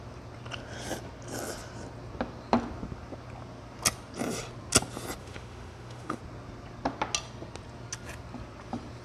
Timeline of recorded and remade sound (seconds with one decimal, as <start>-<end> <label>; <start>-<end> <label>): 0.0-5.2 recorded; 5.2-6.2 remade; 6.2-9.0 recorded